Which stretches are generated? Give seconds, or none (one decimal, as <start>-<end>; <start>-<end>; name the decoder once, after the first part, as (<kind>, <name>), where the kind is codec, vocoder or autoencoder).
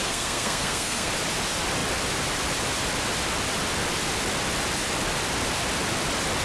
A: 0.0-1.1 (codec, SNAC)